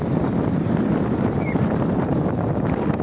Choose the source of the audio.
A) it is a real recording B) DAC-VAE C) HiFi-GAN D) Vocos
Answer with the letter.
A